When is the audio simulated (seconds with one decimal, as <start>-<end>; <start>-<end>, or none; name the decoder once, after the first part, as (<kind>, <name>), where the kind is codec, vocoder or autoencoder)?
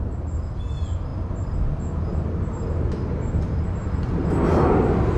1.1-1.7 (vocoder, BigVGAN v2); 2.1-4.3